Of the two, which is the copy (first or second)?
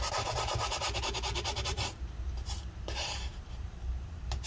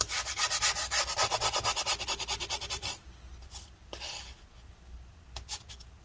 first